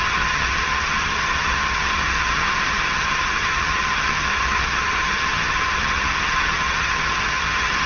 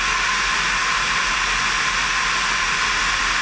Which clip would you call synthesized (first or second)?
first